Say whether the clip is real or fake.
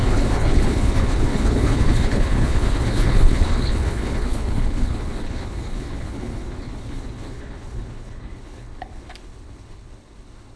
fake